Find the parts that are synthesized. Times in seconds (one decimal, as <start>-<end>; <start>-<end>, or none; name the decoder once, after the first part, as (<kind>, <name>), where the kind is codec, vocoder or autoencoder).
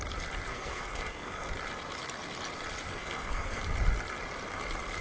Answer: 0.5-1.5 (codec, SNAC); 2.9-3.6